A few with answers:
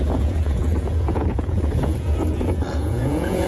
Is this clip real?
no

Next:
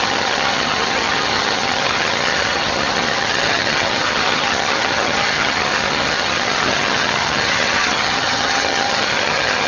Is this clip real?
no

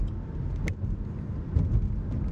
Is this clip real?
yes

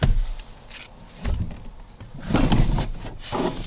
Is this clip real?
yes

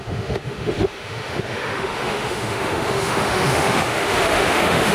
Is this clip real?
no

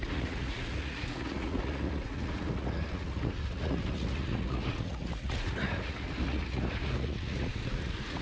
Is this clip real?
no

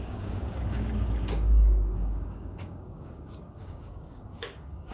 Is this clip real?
no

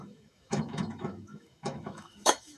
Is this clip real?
no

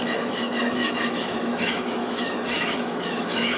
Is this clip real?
no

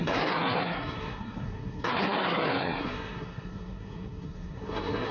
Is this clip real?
no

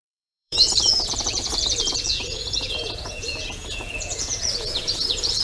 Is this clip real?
no